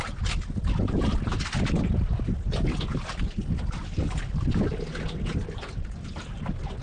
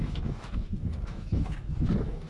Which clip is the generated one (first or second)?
second